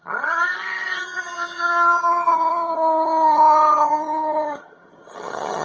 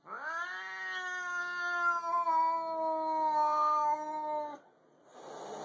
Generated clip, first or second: first